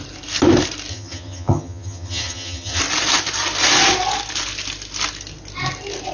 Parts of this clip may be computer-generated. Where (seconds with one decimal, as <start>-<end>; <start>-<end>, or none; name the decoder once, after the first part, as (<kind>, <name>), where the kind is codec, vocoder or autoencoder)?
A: 0.9-2.8 (vocoder, HiFi-GAN)